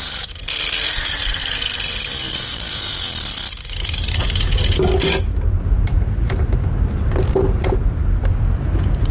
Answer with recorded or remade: recorded